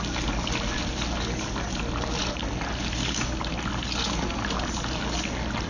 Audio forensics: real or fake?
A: real